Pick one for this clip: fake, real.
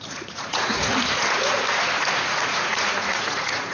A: fake